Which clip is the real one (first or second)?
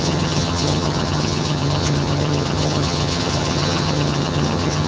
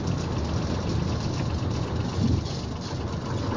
second